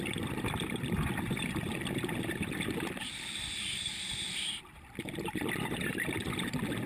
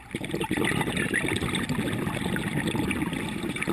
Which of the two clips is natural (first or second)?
second